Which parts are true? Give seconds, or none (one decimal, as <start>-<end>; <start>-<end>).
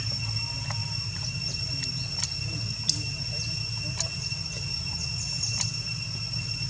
0.0-6.7